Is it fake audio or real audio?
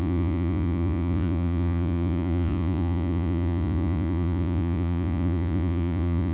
fake